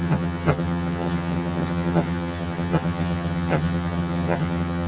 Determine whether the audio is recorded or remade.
remade